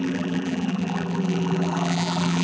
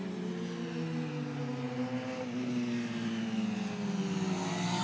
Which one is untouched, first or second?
second